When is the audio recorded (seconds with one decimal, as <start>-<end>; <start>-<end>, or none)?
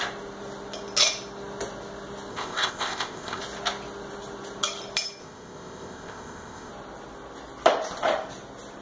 0.0-2.3; 3.4-5.2; 6.7-8.8